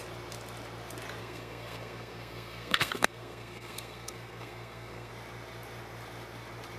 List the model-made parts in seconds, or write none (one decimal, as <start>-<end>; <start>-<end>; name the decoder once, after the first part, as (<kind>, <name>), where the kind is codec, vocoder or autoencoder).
1.2-5.1 (codec, SNAC)